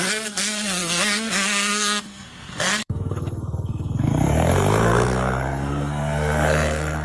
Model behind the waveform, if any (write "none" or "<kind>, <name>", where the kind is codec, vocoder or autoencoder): codec, SNAC